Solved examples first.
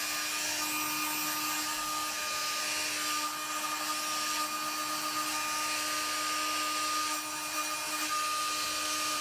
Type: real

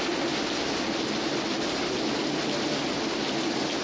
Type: real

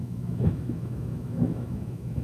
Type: fake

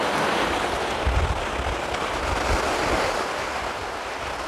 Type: real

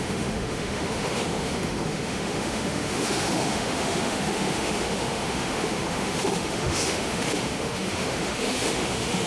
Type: fake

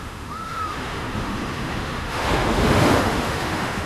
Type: fake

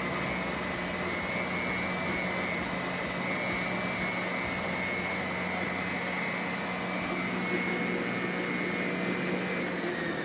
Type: real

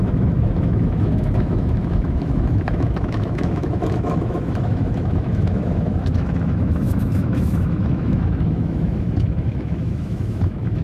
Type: fake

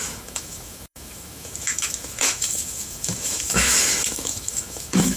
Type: fake